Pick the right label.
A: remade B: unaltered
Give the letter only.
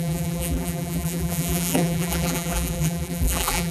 A